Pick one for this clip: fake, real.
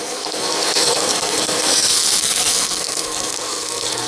fake